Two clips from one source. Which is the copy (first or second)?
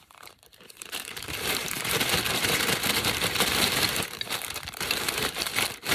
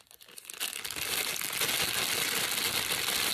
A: first